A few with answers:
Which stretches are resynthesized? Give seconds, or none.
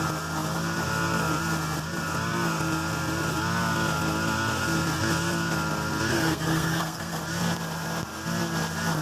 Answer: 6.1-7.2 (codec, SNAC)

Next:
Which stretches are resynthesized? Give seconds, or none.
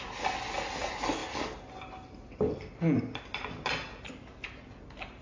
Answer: none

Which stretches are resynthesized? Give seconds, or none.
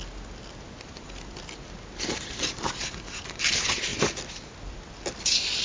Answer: none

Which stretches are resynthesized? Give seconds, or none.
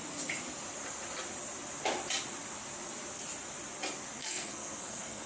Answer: 4.2-5.3 (codec, SNAC)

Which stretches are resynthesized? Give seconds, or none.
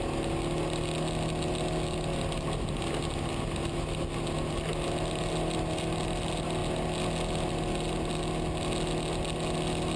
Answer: none